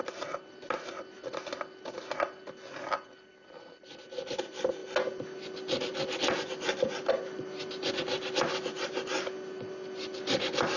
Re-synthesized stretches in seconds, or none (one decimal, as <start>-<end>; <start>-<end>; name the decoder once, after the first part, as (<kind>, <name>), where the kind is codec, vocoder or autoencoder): none